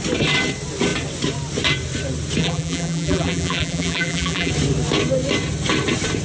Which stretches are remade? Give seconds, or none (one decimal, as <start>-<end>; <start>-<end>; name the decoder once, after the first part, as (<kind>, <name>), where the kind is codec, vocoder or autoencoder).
2.4-4.5 (vocoder, BigVGAN v2)